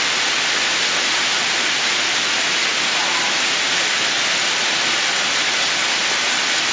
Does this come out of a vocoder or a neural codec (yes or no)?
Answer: no